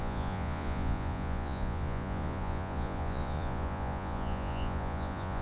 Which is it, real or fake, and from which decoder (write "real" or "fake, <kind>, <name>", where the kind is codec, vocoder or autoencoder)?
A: fake, vocoder, Vocos